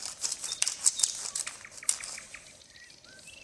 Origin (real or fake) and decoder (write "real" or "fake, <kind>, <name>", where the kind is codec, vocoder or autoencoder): real